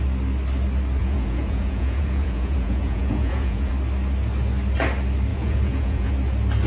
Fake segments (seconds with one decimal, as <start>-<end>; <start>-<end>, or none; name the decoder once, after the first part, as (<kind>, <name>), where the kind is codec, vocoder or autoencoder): 1.0-3.7 (vocoder, Vocos); 5.3-6.1